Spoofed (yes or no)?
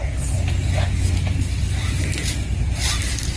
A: no